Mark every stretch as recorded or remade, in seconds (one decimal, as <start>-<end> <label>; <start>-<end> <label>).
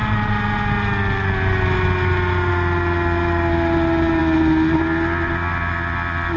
0.0-6.4 recorded